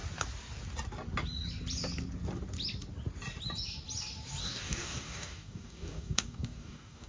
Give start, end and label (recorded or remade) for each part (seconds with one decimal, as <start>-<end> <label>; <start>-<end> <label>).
0.0-4.4 recorded; 4.4-7.1 remade